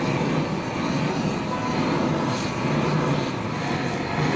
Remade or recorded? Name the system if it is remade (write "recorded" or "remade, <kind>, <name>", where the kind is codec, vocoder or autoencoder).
recorded